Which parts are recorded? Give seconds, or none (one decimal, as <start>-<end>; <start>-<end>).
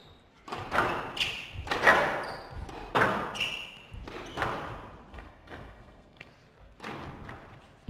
0.0-5.1; 6.3-7.9